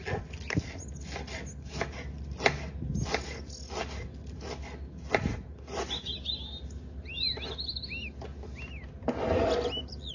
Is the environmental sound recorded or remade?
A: recorded